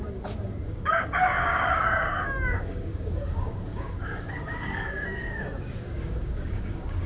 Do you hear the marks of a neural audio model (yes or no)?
yes